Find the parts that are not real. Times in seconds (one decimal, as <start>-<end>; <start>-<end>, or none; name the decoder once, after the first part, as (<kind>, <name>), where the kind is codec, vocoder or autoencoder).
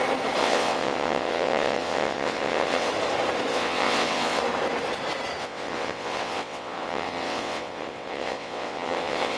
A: 0.4-2.9 (vocoder, WaveNeXt); 3.5-4.4; 5.4-9.4